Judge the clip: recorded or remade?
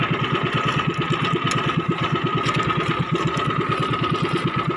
recorded